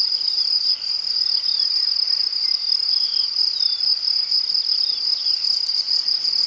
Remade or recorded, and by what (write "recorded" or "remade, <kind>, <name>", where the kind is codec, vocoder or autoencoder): recorded